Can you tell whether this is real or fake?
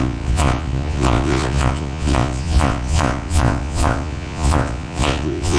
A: fake